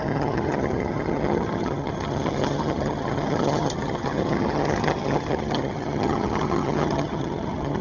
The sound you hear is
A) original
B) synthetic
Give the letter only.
B